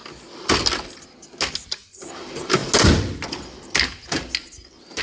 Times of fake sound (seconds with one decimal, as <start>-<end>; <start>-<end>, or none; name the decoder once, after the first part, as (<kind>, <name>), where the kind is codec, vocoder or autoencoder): none